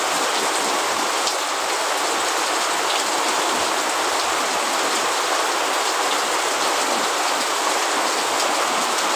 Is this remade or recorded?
recorded